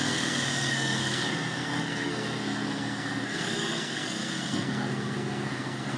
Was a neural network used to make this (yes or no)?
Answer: yes